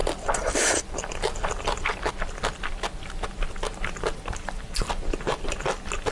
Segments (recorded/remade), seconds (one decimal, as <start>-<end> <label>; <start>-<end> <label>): 0.0-2.1 remade; 2.1-6.1 recorded